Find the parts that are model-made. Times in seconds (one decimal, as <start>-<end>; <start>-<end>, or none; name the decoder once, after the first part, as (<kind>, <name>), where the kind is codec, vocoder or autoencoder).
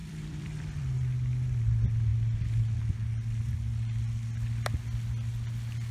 0.0-0.8 (vocoder, BigVGAN v2)